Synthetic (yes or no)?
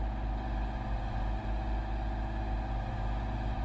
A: no